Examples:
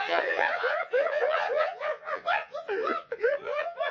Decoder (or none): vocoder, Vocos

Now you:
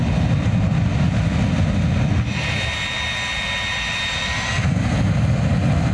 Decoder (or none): none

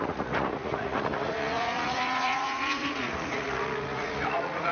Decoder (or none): vocoder, Vocos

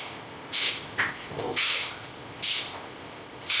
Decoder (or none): codec, ZipCodec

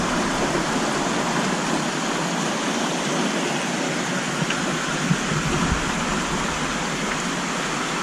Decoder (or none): none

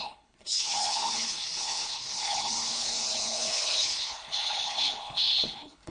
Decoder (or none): codec, HILCodec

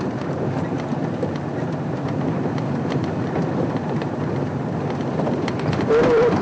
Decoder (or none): none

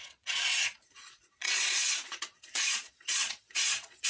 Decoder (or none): vocoder, Vocos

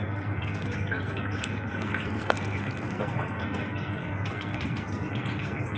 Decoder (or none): codec, SNAC